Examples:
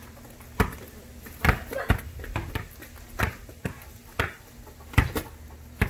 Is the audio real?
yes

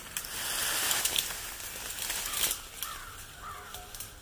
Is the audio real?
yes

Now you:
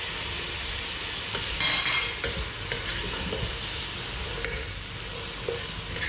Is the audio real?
yes